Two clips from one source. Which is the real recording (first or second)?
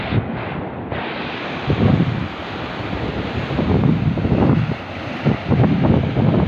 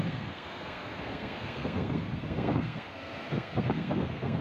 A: first